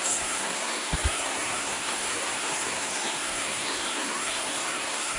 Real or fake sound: fake